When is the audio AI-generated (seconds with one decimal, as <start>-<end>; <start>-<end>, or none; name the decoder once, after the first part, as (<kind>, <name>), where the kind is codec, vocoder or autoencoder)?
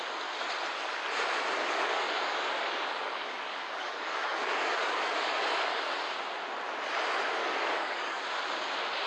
1.6-5.8 (codec, DAC); 7.4-8.2